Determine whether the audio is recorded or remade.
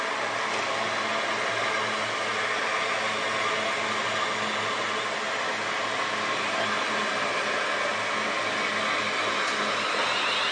recorded